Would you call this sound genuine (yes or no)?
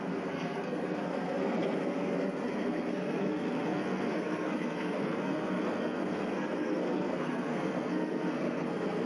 no